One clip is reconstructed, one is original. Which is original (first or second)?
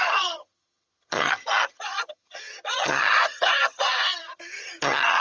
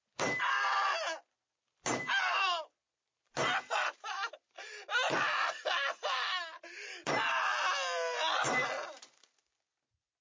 second